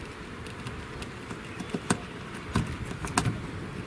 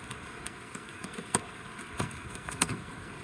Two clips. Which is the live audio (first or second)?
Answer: first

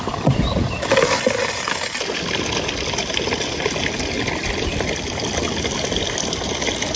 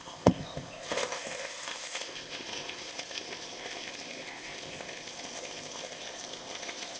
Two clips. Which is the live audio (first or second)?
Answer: first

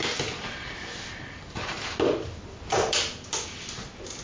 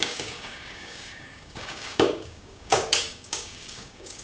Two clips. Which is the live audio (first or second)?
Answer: first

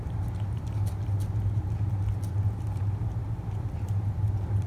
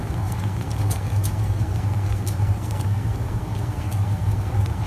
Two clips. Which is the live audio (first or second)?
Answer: first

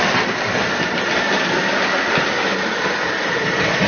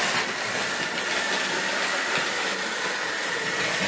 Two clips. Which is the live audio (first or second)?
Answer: second